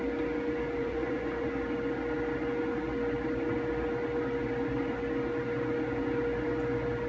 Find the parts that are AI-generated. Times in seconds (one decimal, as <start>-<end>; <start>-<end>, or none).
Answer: 0.8-1.5